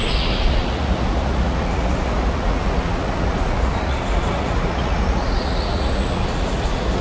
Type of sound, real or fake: fake